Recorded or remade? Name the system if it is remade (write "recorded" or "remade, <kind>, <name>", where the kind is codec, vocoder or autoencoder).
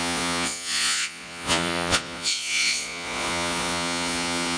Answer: remade, vocoder, Vocos